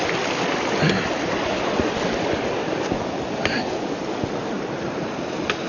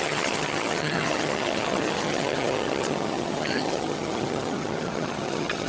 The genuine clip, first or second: first